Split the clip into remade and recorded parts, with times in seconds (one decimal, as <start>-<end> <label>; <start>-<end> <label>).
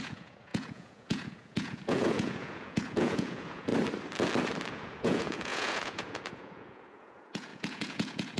0.0-3.7 remade; 3.7-4.7 recorded; 4.7-8.4 remade